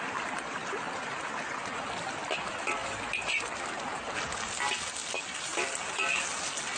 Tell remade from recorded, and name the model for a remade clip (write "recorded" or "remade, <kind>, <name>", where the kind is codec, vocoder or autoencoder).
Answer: recorded